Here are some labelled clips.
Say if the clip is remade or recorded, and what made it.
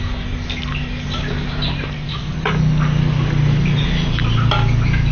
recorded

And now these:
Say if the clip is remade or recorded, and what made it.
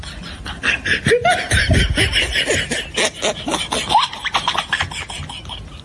recorded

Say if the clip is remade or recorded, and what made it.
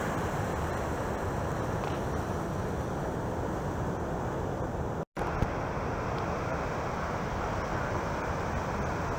recorded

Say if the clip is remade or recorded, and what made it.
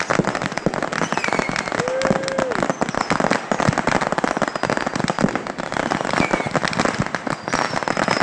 recorded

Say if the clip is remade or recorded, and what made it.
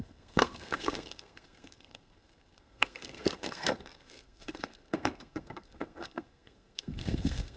remade, codec, SNAC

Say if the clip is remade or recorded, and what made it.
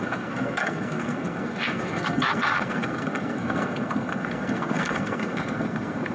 remade, codec, SNAC